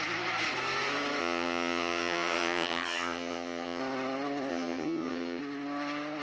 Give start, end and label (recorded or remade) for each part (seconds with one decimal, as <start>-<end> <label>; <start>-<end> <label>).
0.0-1.2 recorded; 1.2-3.8 remade; 3.8-4.5 recorded; 4.5-5.4 remade; 5.4-6.2 recorded